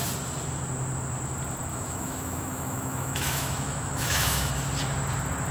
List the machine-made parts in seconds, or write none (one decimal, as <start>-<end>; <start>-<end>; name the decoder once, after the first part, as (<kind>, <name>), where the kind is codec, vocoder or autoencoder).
1.7-4.5 (autoencoder, DAC-VAE)